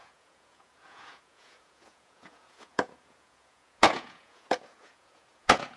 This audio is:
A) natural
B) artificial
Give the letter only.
B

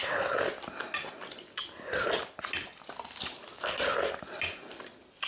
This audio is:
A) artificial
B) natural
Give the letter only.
B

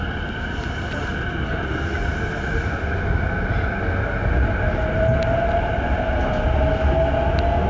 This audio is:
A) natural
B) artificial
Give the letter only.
A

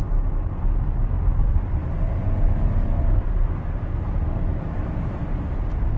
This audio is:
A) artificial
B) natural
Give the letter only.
B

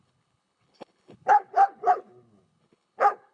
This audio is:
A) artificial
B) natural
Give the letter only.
A